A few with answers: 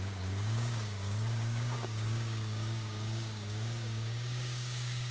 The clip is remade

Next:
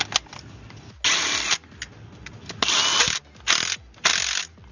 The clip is recorded